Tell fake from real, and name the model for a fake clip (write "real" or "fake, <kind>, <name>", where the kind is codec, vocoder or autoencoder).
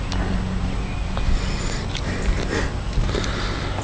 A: real